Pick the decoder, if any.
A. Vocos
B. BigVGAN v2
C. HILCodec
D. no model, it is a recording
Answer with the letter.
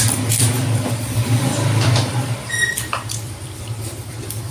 B